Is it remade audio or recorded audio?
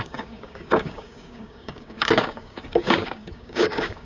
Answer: remade